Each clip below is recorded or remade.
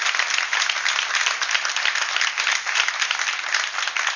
recorded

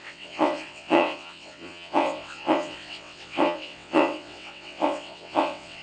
remade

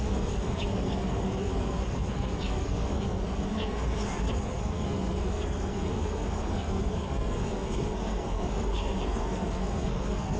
remade